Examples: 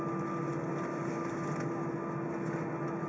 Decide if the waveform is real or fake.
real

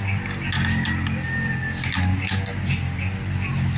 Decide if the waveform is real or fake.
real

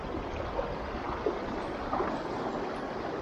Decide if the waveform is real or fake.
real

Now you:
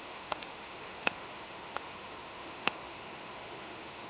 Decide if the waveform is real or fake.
fake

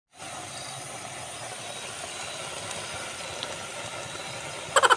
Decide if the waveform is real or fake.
real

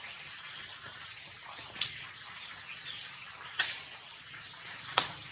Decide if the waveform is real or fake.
real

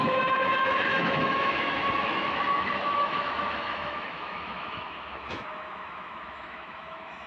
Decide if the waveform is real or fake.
fake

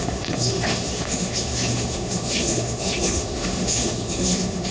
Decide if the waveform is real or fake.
fake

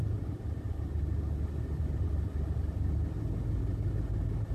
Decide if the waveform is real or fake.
real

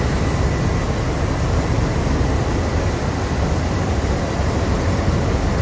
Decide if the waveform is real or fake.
real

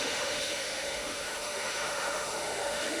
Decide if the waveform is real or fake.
fake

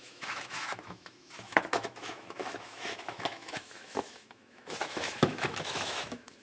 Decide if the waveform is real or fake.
fake